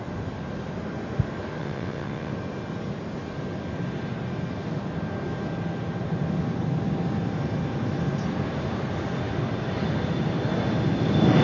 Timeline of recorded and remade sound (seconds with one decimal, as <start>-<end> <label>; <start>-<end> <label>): 0.0-1.6 recorded; 1.6-2.3 remade; 2.3-11.4 recorded

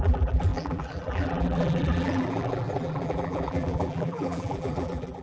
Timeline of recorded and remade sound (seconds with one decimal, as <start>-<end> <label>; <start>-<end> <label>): 0.0-5.2 remade

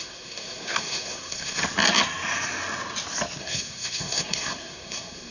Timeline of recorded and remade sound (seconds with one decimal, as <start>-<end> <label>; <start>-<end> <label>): 0.0-1.6 remade; 1.6-3.4 recorded; 3.4-5.3 remade

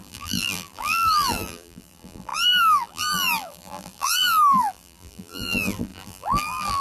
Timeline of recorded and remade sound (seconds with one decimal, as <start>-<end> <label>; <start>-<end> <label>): 0.0-6.8 remade

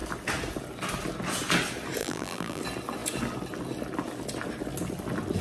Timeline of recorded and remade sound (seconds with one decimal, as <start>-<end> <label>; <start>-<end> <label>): 0.0-2.0 recorded; 2.0-2.6 remade; 2.6-5.4 recorded